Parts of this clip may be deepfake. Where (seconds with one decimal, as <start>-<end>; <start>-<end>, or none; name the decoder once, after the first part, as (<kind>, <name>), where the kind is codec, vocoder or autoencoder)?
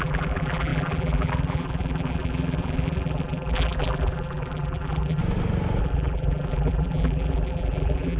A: 0.0-5.2 (vocoder, BigVGAN v2); 5.8-8.2